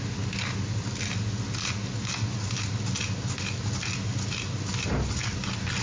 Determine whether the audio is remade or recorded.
recorded